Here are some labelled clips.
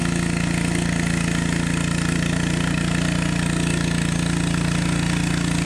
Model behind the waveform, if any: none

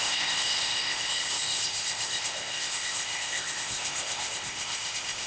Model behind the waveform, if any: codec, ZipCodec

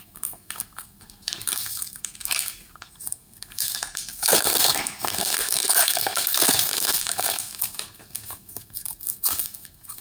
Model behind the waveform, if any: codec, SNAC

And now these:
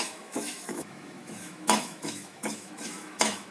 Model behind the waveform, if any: autoencoder, DAC-VAE